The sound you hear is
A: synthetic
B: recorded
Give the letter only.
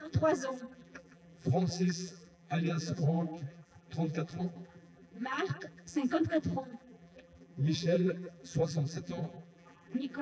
A